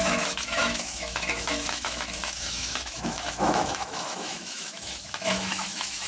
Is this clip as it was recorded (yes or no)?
no